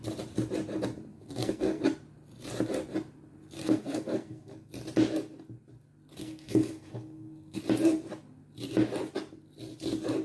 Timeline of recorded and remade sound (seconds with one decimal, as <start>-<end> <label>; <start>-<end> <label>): 0.0-1.1 recorded; 1.1-1.8 remade; 1.8-3.6 recorded; 3.6-4.7 remade; 4.7-6.2 recorded; 6.2-7.6 remade; 7.6-10.2 recorded